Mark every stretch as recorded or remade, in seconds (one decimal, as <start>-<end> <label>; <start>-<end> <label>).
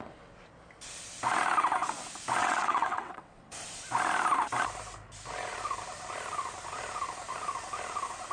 0.0-2.4 recorded; 2.4-3.5 remade; 3.5-8.3 recorded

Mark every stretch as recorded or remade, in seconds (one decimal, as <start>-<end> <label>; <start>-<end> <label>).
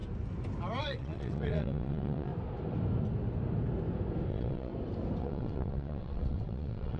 0.0-0.8 recorded; 0.8-2.3 remade; 2.3-4.3 recorded; 4.3-4.7 remade; 4.7-5.2 recorded; 5.2-7.0 remade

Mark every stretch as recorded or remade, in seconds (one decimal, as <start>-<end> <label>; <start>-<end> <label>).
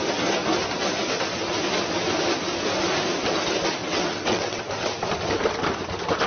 0.0-3.8 recorded; 3.8-4.6 remade; 4.6-6.3 recorded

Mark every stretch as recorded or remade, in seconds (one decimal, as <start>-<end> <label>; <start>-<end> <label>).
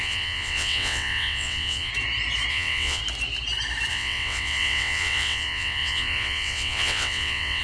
0.0-1.9 remade; 1.9-2.5 recorded; 2.5-3.0 remade; 3.0-3.9 recorded; 3.9-7.6 remade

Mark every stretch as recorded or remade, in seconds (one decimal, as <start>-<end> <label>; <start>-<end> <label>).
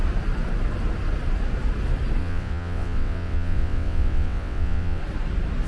0.0-2.2 recorded; 2.2-5.0 remade; 5.0-5.7 recorded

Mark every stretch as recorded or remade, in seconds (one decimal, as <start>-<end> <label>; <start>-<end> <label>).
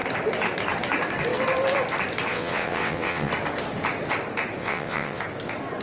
0.0-2.3 recorded; 2.3-3.3 remade; 3.3-4.6 recorded; 4.6-5.2 remade; 5.2-5.8 recorded